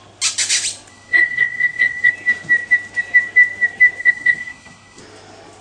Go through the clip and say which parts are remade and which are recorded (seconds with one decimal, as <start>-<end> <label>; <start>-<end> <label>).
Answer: 0.0-0.9 recorded; 0.9-2.1 remade; 2.1-4.0 recorded; 4.0-5.0 remade; 5.0-5.6 recorded